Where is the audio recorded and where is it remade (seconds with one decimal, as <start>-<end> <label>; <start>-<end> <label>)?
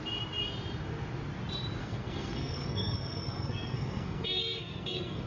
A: 0.0-1.8 recorded; 1.8-5.3 remade